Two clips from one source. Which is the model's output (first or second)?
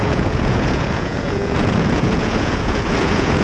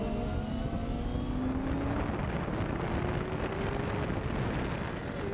first